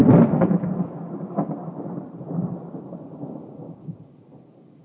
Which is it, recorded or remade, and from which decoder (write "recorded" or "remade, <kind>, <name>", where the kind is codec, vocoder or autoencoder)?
recorded